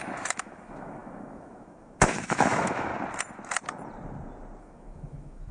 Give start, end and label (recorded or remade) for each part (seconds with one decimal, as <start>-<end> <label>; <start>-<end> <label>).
0.0-2.9 remade; 2.9-4.6 recorded; 4.6-5.5 remade